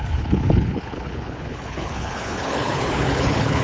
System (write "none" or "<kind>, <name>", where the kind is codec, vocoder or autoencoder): codec, HILCodec